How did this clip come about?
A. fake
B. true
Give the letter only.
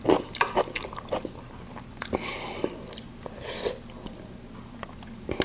B